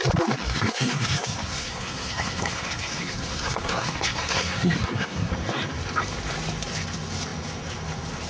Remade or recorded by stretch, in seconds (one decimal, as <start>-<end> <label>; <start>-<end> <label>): 0.0-0.4 recorded; 0.4-5.3 remade; 5.3-8.3 recorded